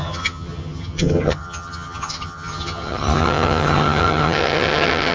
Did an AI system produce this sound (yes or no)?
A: yes